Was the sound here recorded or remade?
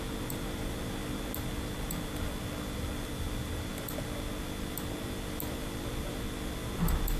recorded